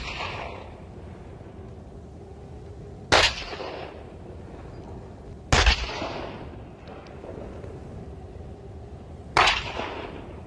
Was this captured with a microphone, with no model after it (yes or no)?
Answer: yes